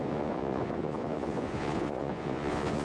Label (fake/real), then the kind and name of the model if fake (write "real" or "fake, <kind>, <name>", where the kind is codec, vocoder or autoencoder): fake, vocoder, Vocos